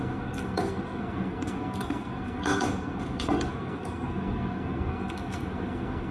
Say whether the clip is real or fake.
fake